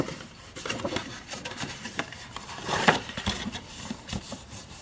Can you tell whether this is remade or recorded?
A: remade